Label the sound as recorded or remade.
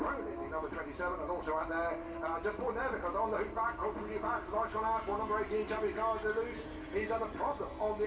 recorded